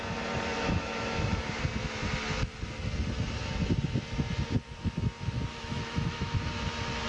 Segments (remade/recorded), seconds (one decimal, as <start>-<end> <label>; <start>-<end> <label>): 0.0-0.5 recorded; 0.5-1.6 remade; 1.6-5.5 recorded; 5.5-6.4 remade; 6.4-7.1 recorded